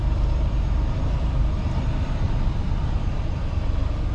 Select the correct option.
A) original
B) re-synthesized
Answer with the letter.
B